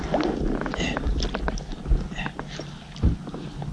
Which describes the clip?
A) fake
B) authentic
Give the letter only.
B